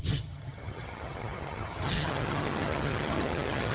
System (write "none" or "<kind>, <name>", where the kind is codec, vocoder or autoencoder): vocoder, HiFi-GAN